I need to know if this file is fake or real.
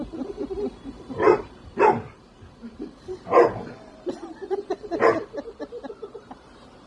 fake